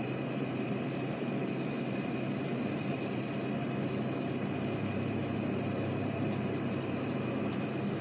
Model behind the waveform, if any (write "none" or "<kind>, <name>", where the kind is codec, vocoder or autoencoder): vocoder, BigVGAN v2